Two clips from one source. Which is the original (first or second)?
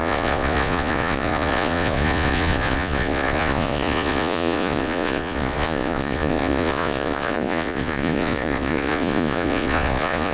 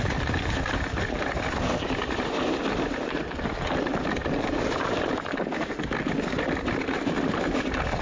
second